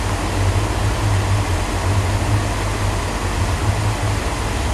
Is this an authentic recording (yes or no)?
yes